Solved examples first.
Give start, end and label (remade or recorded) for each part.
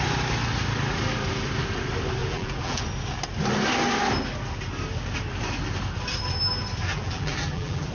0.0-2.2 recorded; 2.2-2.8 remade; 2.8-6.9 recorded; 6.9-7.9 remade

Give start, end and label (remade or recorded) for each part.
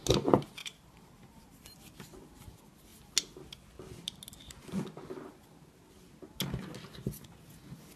0.0-0.6 recorded; 0.6-1.7 remade; 1.7-8.0 recorded